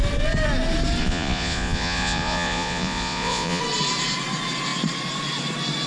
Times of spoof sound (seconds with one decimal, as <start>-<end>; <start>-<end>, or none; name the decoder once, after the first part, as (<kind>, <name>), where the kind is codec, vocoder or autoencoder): 1.0-3.6 (vocoder, Vocos)